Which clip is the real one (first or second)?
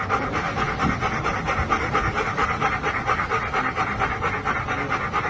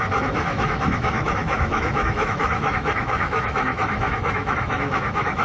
first